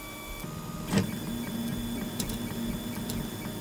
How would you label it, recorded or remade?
recorded